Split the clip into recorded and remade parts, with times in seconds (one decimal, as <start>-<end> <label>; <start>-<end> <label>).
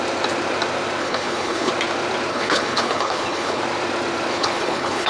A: 0.0-1.0 recorded; 1.0-1.7 remade; 1.7-2.3 recorded; 2.3-3.6 remade; 3.6-4.3 recorded; 4.3-5.1 remade